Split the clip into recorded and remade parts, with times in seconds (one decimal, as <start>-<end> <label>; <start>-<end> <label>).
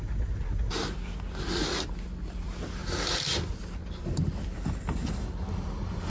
0.0-6.1 recorded